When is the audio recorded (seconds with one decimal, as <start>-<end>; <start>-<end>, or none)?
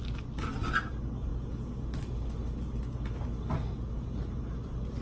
0.0-5.0